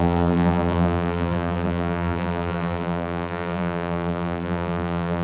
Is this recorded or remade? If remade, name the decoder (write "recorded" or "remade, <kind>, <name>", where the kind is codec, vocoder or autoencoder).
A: remade, vocoder, BigVGAN v2